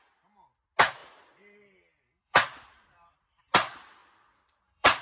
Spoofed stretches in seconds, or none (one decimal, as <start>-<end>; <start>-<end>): 1.0-3.4; 4.0-5.0